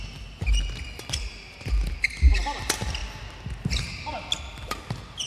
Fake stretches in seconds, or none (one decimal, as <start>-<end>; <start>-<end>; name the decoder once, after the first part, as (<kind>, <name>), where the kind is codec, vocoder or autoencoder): none